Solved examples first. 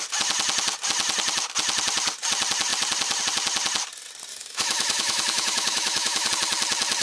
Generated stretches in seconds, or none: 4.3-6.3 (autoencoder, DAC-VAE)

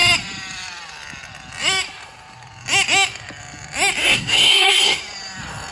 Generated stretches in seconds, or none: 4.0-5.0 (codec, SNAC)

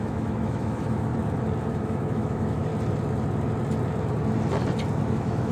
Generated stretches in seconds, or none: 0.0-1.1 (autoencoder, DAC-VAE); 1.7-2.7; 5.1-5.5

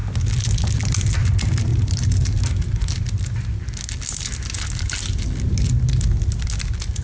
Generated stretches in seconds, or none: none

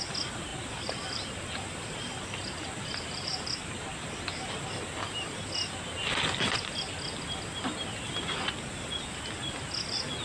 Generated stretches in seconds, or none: 0.5-4.1 (vocoder, BigVGAN v2)

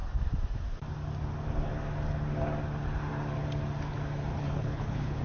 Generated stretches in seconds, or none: 4.3-5.2 (codec, HILCodec)

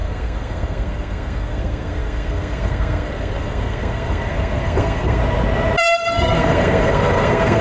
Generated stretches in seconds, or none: 0.0-5.2 (codec, SNAC); 5.8-7.6